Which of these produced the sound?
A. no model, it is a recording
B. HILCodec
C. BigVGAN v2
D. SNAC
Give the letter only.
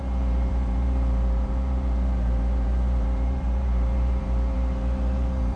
C